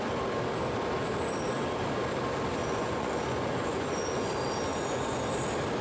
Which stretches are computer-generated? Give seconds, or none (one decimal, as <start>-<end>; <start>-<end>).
2.6-4.2; 4.7-5.3